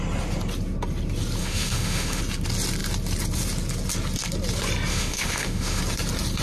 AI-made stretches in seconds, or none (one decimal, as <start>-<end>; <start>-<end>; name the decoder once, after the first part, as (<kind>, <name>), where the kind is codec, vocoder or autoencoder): 1.4-2.2 (autoencoder, DAC-VAE); 4.9-5.8